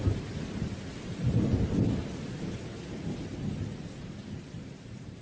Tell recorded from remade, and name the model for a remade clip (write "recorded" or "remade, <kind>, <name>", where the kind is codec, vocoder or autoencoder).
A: remade, vocoder, BigVGAN v2